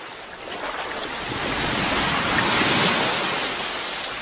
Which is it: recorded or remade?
recorded